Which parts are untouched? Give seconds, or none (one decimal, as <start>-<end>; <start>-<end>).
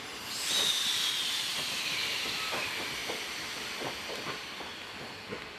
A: 0.0-5.6